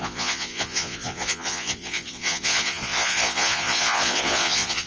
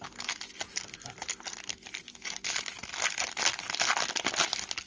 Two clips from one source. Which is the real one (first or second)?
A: second